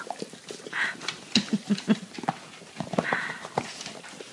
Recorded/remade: recorded